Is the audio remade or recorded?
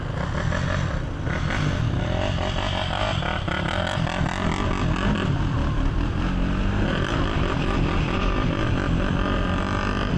recorded